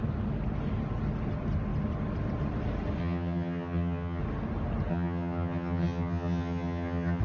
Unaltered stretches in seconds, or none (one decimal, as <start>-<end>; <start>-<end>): 0.0-3.0; 4.2-4.9